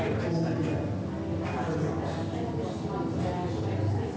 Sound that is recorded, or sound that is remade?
recorded